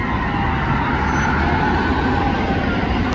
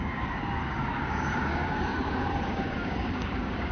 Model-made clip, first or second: second